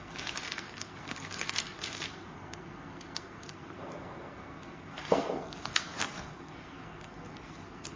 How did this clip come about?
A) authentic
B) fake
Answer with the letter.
B